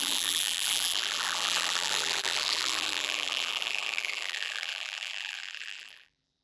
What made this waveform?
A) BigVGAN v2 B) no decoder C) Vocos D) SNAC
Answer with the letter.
A